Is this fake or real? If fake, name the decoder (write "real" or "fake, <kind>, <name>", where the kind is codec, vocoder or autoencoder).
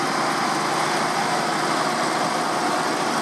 real